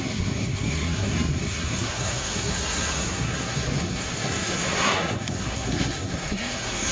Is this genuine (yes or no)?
no